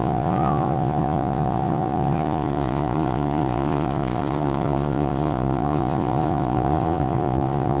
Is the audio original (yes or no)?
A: no